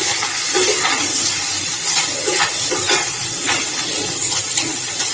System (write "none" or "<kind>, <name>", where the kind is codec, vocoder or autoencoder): none